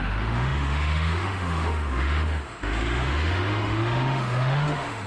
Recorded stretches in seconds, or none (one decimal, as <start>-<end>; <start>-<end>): none